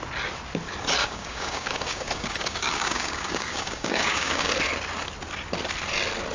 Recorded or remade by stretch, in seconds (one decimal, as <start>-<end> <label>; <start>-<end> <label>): 0.0-1.0 recorded; 1.0-4.5 remade; 4.5-6.3 recorded